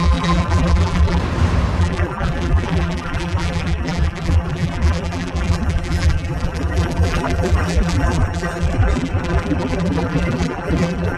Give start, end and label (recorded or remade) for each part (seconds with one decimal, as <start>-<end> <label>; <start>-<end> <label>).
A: 0.0-1.2 remade; 1.2-1.8 recorded; 1.8-11.2 remade